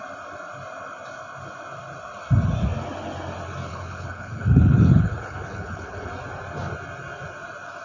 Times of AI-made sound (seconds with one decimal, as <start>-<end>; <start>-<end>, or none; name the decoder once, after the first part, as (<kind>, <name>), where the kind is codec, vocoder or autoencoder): 3.7-6.1 (codec, HILCodec)